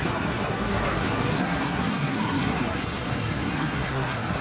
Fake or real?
fake